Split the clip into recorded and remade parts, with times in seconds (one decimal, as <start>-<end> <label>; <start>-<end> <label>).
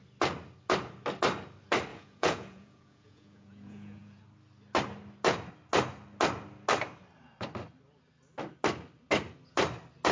0.0-1.9 recorded; 1.9-4.2 remade; 4.2-10.1 recorded